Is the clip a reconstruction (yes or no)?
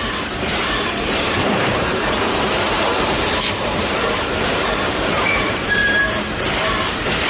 yes